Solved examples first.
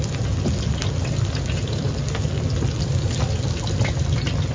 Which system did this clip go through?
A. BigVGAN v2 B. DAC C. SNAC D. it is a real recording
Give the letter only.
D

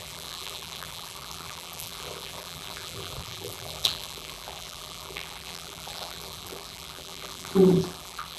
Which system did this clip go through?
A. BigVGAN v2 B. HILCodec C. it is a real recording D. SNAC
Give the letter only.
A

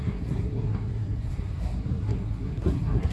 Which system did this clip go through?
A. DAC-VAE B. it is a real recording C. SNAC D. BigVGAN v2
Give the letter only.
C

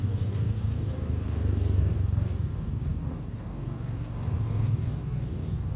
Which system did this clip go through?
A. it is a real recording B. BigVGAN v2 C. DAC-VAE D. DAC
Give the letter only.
D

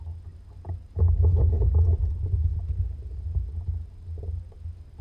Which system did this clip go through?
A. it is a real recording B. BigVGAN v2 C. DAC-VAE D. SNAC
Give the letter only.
A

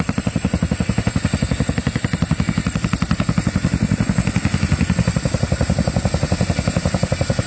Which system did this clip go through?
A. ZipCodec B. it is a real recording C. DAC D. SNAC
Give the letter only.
B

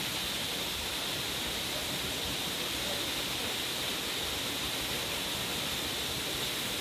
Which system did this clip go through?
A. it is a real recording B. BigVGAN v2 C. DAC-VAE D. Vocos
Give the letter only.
B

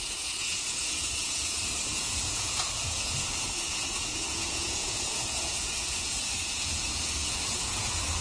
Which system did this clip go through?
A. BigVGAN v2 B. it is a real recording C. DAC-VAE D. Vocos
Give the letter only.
D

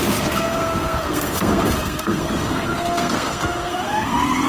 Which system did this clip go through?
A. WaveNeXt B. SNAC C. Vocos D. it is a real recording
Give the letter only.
B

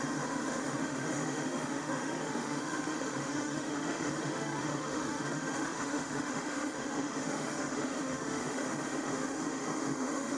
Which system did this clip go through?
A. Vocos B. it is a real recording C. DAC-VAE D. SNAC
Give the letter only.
C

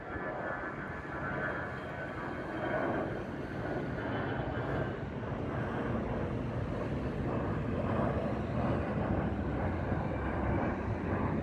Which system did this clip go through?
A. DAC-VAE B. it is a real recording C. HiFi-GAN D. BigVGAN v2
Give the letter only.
B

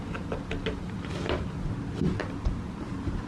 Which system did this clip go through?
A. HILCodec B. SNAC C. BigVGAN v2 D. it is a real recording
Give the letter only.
D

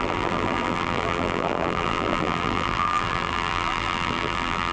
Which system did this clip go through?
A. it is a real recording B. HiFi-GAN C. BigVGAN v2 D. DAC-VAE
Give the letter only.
C